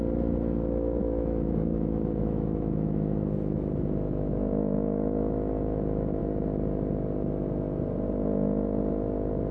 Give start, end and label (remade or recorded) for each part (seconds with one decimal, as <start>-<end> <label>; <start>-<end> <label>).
0.0-1.0 recorded; 1.0-6.2 remade; 6.2-9.5 recorded